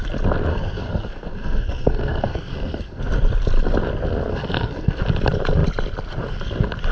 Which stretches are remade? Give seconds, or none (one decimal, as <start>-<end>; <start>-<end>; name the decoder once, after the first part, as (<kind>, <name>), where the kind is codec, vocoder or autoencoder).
0.5-3.0 (codec, SNAC); 4.3-5.0